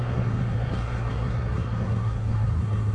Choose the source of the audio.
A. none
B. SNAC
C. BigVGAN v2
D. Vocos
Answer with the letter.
B